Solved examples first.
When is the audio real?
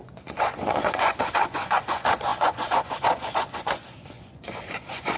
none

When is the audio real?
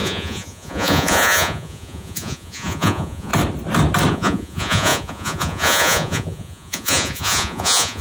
3.3-4.1